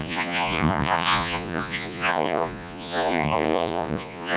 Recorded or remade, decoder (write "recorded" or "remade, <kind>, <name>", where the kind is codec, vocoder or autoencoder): remade, vocoder, Vocos